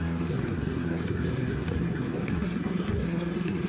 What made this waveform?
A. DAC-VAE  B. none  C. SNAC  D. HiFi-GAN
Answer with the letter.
C